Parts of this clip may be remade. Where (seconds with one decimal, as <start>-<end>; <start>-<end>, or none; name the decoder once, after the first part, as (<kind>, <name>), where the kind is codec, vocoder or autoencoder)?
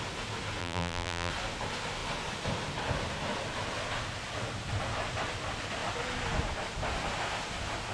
0.6-1.3 (vocoder, BigVGAN v2)